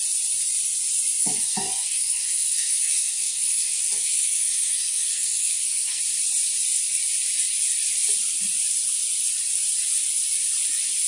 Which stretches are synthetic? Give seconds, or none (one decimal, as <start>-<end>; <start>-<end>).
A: 1.2-6.0